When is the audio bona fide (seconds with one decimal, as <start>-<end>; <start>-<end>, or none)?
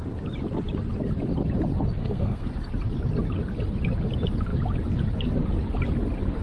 0.0-2.0; 2.5-6.4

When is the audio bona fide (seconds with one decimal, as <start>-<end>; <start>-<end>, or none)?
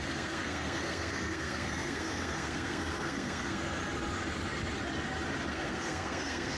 3.8-5.5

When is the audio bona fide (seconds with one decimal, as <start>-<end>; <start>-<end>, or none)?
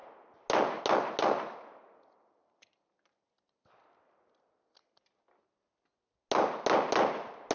0.0-7.5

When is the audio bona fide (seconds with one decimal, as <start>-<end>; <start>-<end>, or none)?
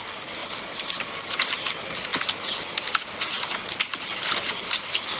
0.0-5.2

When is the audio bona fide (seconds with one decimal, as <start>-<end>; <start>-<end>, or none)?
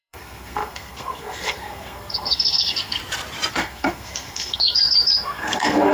3.0-3.5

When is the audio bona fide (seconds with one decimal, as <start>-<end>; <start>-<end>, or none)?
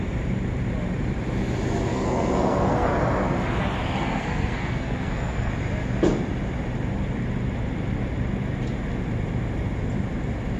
0.0-1.9; 3.0-3.9; 5.5-10.6